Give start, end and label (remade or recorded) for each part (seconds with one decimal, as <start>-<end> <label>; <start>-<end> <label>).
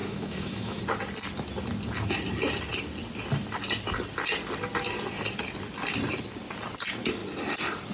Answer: 0.0-0.8 remade; 0.8-7.9 recorded